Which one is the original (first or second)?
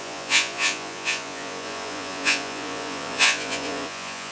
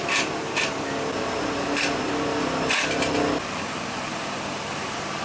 second